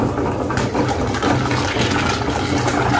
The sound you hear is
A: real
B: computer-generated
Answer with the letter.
A